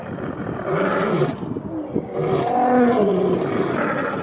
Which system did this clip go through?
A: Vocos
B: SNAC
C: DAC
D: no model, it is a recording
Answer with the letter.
D